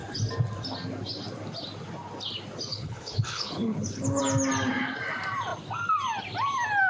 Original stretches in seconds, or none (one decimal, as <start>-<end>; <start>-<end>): 0.0-2.7; 4.2-6.9